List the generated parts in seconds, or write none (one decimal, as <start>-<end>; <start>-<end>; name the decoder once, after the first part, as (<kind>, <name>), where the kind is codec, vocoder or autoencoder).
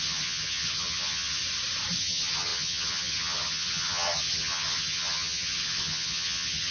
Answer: 0.0-1.4 (vocoder, HiFi-GAN); 2.0-6.7